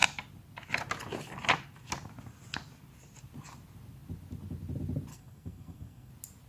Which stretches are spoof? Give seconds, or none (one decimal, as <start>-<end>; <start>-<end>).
5.1-6.1